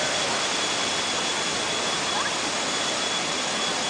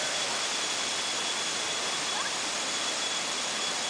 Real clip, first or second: first